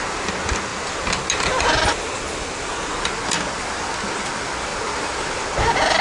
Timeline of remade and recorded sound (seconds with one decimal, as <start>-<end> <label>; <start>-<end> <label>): 0.0-6.0 recorded